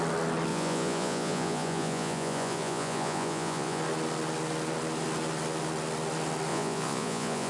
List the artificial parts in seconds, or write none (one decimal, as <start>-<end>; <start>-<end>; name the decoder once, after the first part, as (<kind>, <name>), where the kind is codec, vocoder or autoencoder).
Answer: 0.5-3.8 (vocoder, Vocos); 6.5-7.5